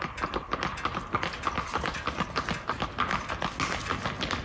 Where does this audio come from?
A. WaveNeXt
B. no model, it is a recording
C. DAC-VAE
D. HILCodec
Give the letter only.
B